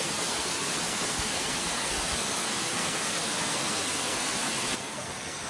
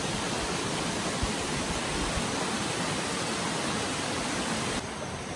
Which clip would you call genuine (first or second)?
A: second